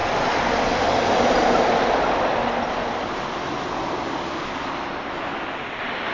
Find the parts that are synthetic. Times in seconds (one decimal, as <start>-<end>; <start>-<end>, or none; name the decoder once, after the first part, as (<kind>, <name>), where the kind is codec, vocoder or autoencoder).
none